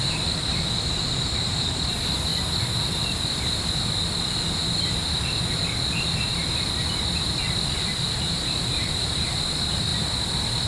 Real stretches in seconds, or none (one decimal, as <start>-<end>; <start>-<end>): 2.3-7.2; 9.9-10.7